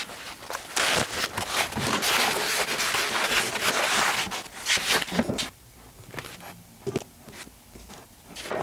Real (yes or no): yes